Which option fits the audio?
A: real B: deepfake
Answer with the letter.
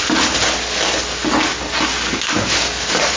A